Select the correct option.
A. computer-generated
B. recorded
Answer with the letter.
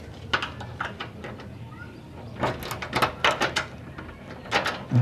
B